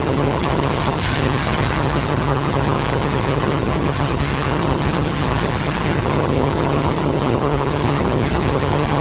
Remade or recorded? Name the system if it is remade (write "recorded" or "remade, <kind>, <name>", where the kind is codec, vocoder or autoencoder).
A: remade, vocoder, HiFi-GAN